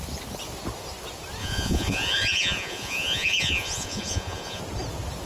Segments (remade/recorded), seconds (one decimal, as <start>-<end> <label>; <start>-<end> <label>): 0.0-1.4 recorded; 1.4-4.6 remade; 4.6-5.3 recorded